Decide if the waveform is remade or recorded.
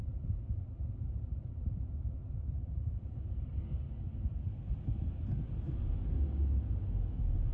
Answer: recorded